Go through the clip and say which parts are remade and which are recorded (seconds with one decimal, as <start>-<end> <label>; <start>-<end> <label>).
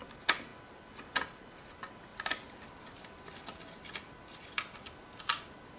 0.0-2.1 recorded; 2.1-5.8 remade